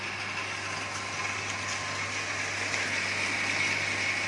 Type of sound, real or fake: real